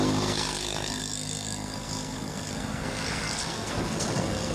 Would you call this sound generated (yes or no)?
yes